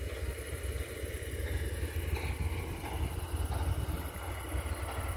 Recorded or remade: recorded